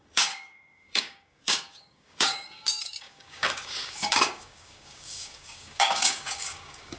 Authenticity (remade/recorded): remade